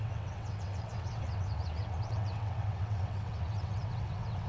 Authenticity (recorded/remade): remade